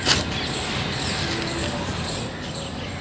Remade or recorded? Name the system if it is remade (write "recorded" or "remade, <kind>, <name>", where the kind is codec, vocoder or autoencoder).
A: recorded